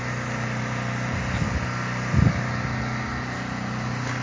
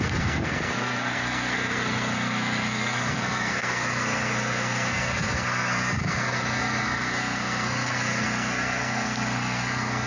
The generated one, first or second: second